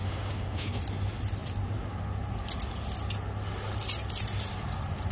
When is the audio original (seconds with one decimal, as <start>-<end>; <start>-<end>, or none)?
0.8-5.1